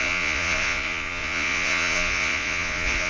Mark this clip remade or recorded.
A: remade